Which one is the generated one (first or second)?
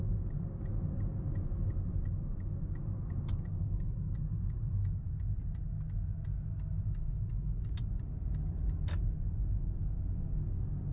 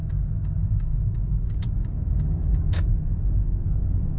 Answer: second